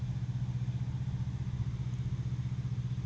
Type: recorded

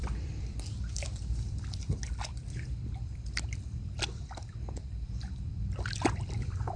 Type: remade